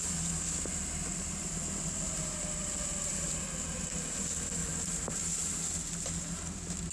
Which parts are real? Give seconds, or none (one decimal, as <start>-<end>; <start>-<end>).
0.0-6.9